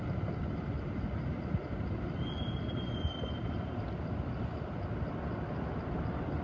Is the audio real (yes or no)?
yes